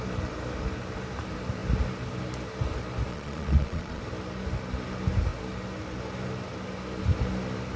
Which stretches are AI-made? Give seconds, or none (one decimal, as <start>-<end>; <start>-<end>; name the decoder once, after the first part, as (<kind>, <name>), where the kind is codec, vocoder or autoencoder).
3.1-4.0 (vocoder, Vocos)